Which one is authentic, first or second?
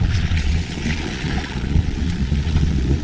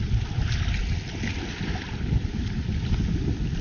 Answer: second